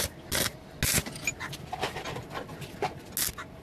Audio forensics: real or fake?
real